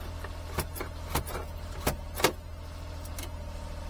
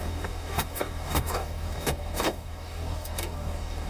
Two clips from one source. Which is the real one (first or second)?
first